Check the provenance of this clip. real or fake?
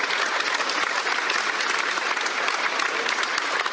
real